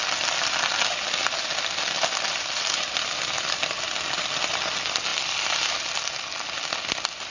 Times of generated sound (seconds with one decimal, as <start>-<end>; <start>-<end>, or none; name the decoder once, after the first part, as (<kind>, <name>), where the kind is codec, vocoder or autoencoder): none